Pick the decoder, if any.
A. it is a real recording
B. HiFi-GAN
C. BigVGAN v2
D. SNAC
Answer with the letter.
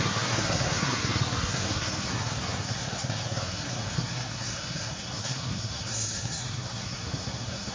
D